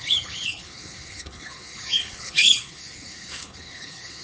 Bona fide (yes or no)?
no